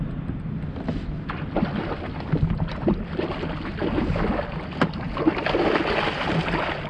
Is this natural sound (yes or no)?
yes